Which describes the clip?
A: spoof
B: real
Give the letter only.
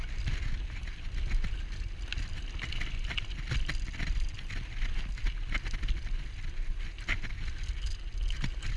B